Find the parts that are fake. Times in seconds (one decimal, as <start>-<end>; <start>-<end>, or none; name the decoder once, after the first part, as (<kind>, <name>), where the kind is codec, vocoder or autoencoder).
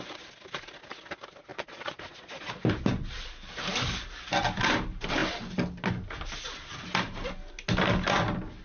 1.5-2.6 (vocoder, Vocos)